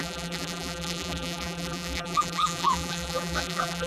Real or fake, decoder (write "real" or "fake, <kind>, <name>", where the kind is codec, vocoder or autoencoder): fake, vocoder, BigVGAN v2